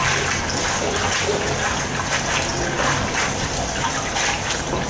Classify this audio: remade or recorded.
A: recorded